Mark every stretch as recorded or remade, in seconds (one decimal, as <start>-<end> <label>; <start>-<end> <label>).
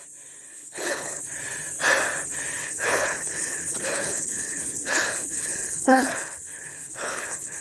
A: 0.0-0.5 recorded; 0.5-1.2 remade; 1.2-2.6 recorded; 2.6-7.6 remade